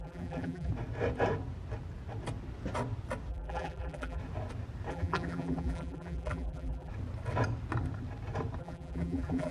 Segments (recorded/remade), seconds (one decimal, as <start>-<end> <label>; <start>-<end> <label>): 0.0-0.7 remade; 0.7-3.3 recorded; 3.3-4.2 remade; 4.2-4.9 recorded; 4.9-6.9 remade; 6.9-8.6 recorded; 8.6-9.5 remade